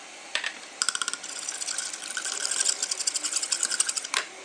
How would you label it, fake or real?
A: real